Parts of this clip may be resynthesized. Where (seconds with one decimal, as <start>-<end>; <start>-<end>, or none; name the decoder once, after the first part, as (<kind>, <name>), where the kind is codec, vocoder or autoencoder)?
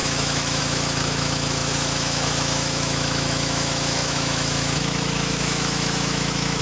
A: 0.0-6.6 (autoencoder, DAC-VAE)